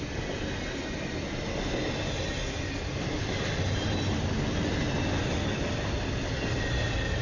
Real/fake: real